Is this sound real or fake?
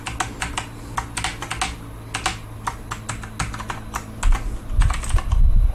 real